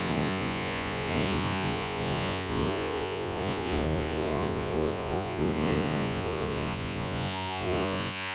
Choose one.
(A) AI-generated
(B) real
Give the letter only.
A